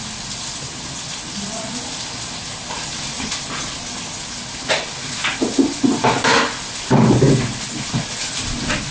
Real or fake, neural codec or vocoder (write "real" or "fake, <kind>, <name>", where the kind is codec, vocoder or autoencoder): real